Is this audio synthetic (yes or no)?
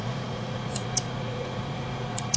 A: yes